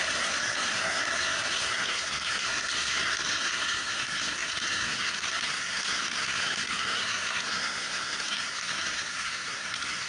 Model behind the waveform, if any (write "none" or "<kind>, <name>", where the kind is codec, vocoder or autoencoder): codec, SNAC